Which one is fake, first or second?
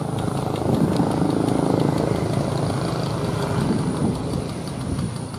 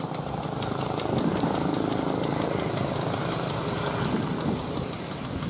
second